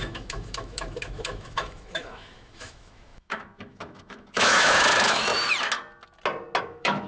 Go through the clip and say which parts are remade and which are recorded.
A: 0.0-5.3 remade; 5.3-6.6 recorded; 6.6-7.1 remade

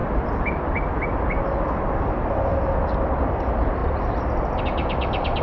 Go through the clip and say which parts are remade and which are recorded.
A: 0.0-5.4 recorded